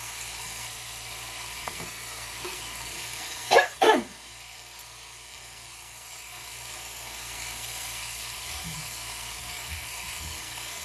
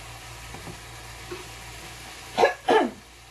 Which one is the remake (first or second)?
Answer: first